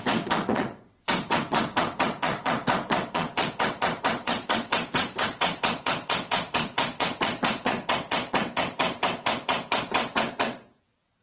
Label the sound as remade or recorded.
remade